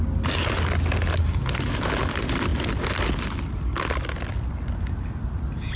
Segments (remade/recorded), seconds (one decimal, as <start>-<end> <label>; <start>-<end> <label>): 0.0-5.8 recorded